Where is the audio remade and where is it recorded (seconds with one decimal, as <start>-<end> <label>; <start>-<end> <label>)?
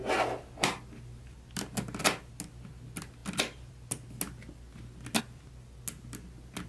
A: 0.0-6.7 recorded